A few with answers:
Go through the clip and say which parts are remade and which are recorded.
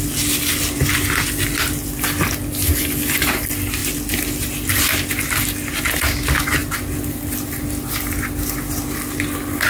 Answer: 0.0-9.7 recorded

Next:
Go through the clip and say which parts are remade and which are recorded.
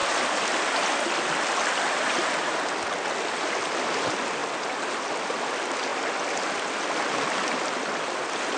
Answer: 0.0-8.6 recorded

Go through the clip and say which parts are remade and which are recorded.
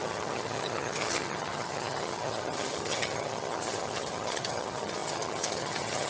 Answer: 0.0-6.1 remade